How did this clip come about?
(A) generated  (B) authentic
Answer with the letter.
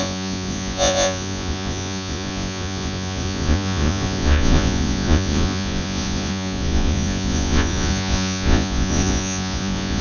A